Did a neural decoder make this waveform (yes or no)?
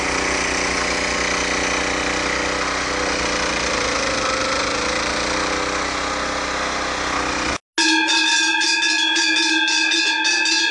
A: no